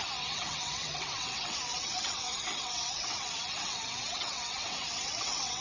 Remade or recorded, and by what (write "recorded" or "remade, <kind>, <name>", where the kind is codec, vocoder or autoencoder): remade, vocoder, WaveNeXt